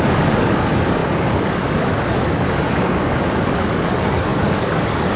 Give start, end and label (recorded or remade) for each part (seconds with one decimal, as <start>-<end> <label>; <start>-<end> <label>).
0.0-5.2 remade